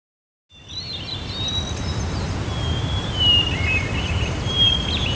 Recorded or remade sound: recorded